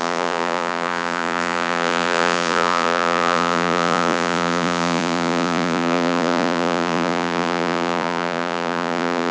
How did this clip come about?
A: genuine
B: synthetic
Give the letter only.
B